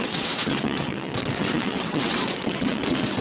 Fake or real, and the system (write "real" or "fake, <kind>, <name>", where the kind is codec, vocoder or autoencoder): fake, vocoder, WaveNeXt